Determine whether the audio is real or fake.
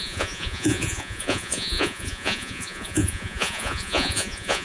fake